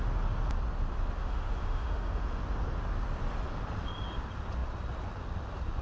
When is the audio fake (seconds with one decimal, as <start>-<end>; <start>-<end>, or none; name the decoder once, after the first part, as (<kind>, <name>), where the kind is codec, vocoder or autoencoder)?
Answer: 1.2-2.4 (autoencoder, DAC-VAE)